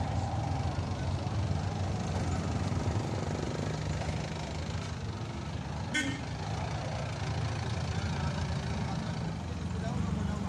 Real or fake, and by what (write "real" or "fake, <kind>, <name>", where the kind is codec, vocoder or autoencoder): real